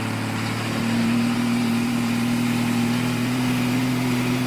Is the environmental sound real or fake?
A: fake